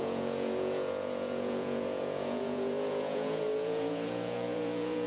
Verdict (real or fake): fake